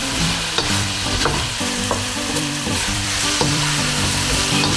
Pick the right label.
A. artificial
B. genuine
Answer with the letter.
A